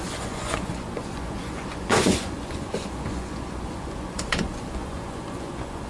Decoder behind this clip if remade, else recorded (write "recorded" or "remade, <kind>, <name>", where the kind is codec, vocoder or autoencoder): remade, vocoder, Vocos